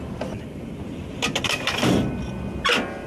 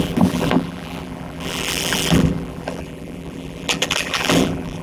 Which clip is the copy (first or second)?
second